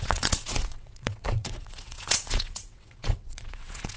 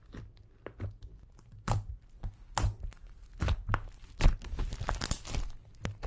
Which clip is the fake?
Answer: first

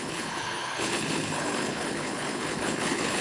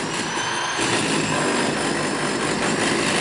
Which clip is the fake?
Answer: first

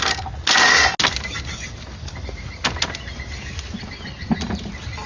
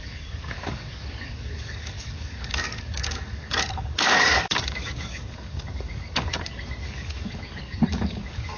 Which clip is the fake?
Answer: second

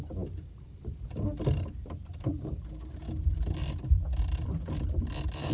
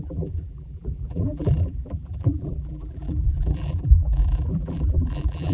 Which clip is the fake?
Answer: second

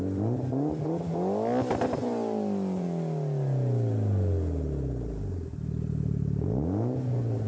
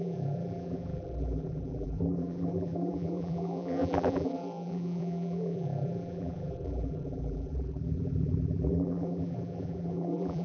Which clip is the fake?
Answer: second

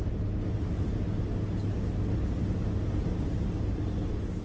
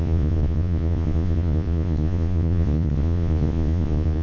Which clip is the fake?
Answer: second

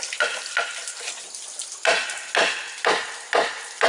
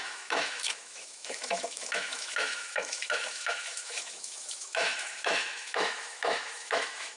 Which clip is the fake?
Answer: second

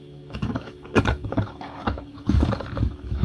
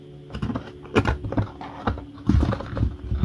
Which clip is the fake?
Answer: first